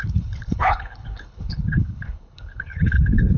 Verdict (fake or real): fake